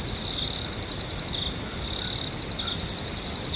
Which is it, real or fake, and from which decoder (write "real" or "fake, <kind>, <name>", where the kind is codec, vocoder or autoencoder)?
real